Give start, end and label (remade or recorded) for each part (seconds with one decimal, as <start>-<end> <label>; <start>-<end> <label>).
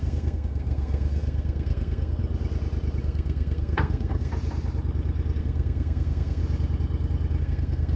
0.0-2.2 remade; 2.2-3.0 recorded; 3.0-4.3 remade; 4.3-5.4 recorded; 5.4-6.4 remade; 6.4-7.4 recorded; 7.4-8.0 remade